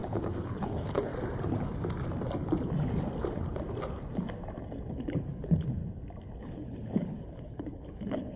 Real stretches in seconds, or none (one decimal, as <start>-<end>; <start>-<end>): 1.1-4.9; 5.8-6.4

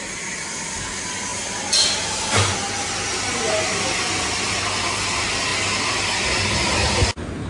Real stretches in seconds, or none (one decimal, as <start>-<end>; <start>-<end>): 0.0-7.5

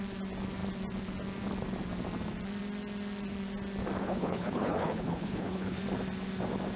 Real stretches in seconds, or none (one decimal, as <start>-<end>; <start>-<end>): 0.0-4.0; 5.8-6.8

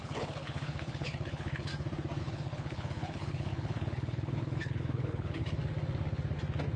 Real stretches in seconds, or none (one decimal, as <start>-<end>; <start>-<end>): 1.7-2.2; 5.6-6.8

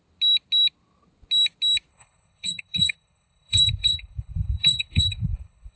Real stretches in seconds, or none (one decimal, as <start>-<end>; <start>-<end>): 0.0-1.9

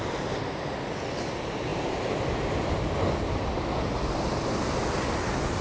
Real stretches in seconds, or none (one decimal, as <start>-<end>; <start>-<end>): 0.0-5.6

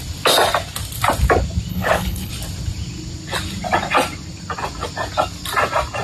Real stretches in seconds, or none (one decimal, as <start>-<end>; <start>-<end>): 0.0-1.7; 2.3-6.0

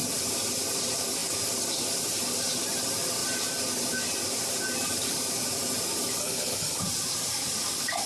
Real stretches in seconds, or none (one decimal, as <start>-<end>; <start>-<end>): 0.0-6.2; 6.8-8.1